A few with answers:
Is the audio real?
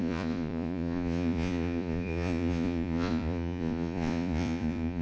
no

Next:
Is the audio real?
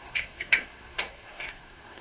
no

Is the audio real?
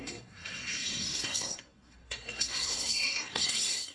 no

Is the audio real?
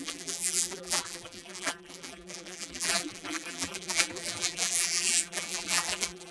no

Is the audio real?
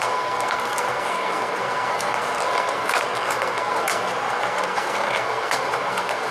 no